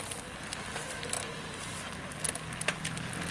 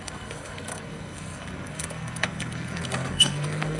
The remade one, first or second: second